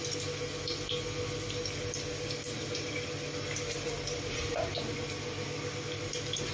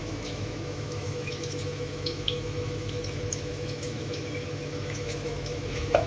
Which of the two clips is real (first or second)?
first